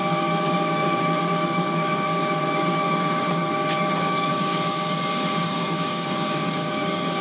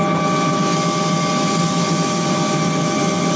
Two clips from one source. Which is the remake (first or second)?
first